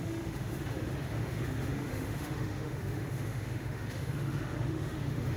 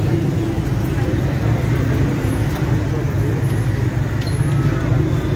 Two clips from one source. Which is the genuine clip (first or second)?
second